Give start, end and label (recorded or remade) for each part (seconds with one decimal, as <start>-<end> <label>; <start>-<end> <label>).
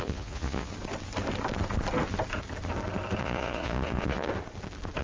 0.0-0.7 remade; 0.7-3.2 recorded; 3.2-4.3 remade; 4.3-5.0 recorded